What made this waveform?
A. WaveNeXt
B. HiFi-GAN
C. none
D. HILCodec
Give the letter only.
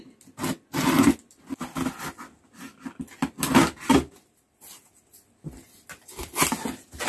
C